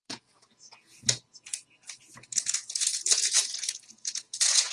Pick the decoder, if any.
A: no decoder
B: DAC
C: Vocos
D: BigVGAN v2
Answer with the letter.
C